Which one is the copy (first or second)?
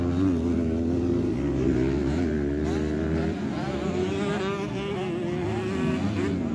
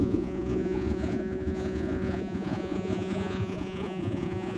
second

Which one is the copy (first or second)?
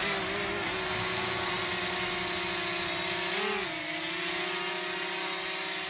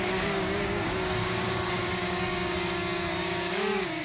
second